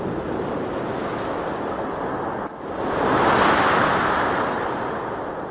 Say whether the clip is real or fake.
real